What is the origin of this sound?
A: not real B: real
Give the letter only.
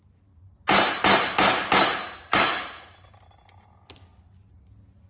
B